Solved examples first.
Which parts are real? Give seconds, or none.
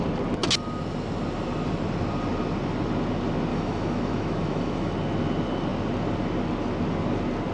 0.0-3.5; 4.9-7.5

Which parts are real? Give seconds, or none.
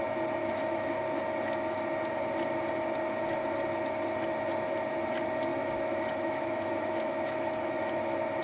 0.0-0.4; 1.2-5.5; 7.8-8.4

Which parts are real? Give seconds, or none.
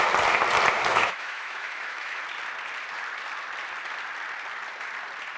0.0-0.9; 2.2-5.4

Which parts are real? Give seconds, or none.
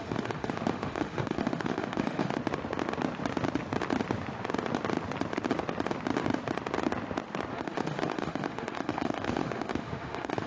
2.4-7.5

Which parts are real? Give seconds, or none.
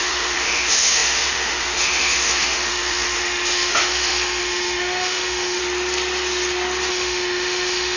5.6-6.9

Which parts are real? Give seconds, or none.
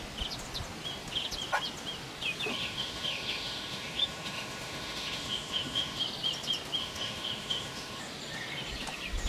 0.0-2.5; 6.0-6.8; 8.0-9.3